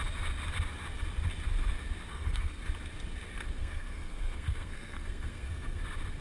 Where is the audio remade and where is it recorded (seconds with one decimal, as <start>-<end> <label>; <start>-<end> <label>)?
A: 0.0-2.1 recorded; 2.1-2.6 remade; 2.6-3.6 recorded; 3.6-5.8 remade; 5.8-6.2 recorded

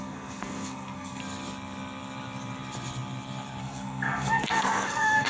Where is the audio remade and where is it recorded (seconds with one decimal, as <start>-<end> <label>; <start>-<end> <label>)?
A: 0.0-1.2 remade; 1.2-3.6 recorded; 3.6-5.3 remade

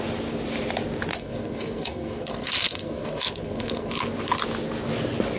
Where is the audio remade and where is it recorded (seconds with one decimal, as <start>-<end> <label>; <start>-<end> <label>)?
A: 0.0-1.1 recorded; 1.1-3.9 remade; 3.9-5.4 recorded

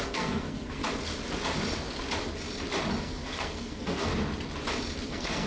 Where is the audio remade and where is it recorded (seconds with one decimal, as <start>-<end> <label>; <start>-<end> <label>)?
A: 0.0-0.8 remade; 0.8-3.0 recorded; 3.0-4.1 remade; 4.1-5.1 recorded; 5.1-5.5 remade

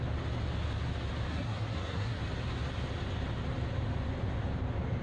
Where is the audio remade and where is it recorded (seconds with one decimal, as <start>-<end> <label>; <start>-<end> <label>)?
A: 0.0-1.3 recorded; 1.3-2.2 remade; 2.2-5.0 recorded

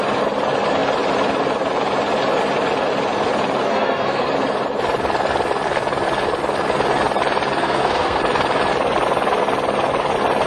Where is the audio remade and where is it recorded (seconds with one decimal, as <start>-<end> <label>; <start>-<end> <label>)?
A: 0.0-3.6 recorded; 3.6-4.3 remade; 4.3-7.6 recorded; 7.6-8.2 remade; 8.2-10.5 recorded